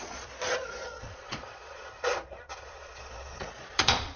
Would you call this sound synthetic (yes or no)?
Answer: yes